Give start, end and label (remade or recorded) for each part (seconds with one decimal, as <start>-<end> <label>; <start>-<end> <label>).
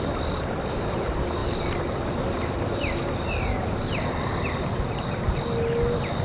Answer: 0.0-6.2 recorded